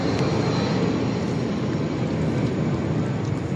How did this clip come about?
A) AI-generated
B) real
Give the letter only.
B